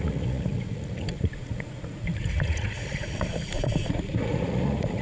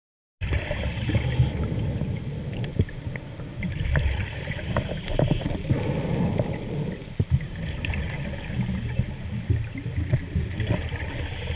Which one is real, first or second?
second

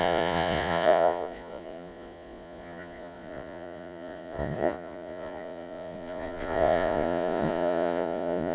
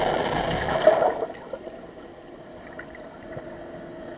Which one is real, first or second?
second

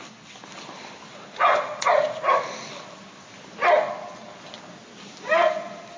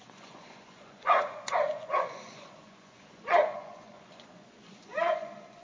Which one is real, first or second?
first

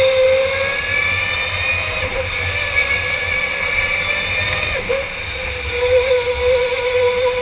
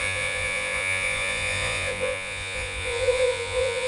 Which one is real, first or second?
first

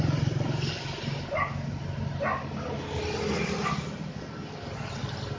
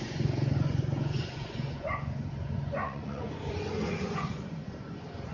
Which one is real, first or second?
first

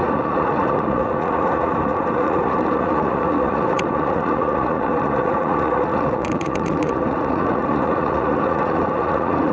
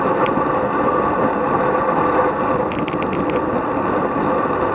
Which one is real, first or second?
second